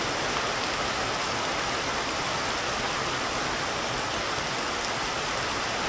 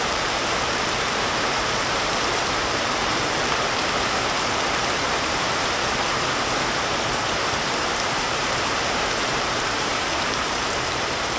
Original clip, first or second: first